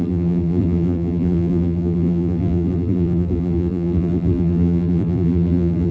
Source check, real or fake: fake